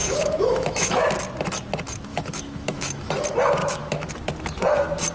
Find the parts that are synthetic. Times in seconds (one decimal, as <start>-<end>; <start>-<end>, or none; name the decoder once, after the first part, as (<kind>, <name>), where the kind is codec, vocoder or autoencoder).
0.0-1.1 (autoencoder, DAC-VAE); 2.1-3.1; 3.6-4.1

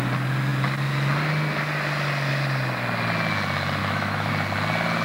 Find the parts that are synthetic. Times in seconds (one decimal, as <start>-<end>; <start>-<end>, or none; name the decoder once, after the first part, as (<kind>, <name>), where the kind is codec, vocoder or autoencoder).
3.8-4.3 (autoencoder, DAC-VAE)

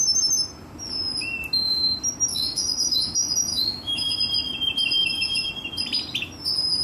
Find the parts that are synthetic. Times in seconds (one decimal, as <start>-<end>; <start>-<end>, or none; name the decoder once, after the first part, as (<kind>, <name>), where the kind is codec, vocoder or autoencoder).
2.3-3.0 (autoencoder, DAC-VAE); 3.5-4.2; 5.0-5.5

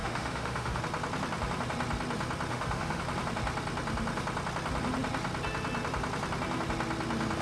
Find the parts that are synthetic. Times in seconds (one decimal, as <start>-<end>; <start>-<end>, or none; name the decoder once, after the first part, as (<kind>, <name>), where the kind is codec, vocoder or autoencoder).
0.0-0.8 (autoencoder, DAC-VAE); 2.5-3.0

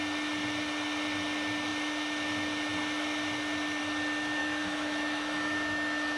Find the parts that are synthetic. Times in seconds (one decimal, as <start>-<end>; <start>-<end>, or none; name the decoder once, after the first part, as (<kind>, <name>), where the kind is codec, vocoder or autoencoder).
4.4-6.2 (autoencoder, DAC-VAE)

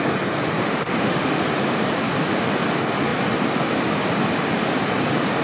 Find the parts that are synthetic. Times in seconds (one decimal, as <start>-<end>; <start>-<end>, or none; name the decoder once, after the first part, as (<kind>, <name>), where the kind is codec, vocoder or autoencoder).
0.6-1.4 (autoencoder, DAC-VAE)

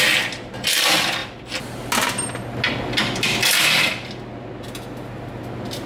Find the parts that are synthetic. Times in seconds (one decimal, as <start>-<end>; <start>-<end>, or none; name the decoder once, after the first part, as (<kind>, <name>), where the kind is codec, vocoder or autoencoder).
none

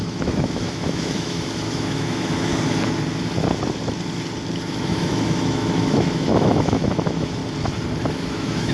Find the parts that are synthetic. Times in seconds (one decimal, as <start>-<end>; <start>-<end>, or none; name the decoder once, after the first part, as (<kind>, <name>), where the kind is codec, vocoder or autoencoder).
0.0-2.5 (autoencoder, DAC-VAE); 4.6-7.4; 8.1-8.7